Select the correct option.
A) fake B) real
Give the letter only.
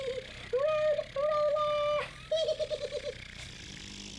B